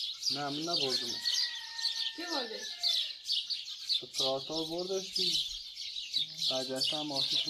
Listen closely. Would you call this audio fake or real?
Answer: real